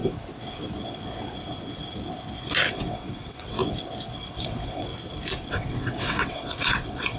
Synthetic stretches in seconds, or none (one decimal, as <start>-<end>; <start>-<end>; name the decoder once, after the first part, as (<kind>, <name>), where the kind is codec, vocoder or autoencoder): 2.7-3.6 (vocoder, WaveNeXt); 4.3-4.9; 5.5-7.2